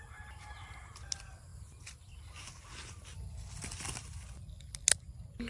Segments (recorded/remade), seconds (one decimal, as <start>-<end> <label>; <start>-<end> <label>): 0.0-5.5 recorded